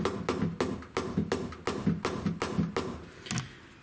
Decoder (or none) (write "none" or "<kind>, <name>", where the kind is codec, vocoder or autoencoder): none